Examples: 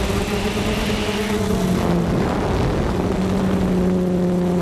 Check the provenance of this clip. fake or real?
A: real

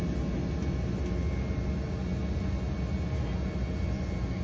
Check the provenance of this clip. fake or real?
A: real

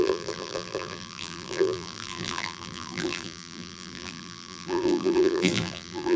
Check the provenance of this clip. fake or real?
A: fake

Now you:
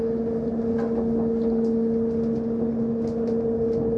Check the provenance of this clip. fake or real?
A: real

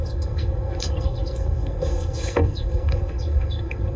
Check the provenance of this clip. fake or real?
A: fake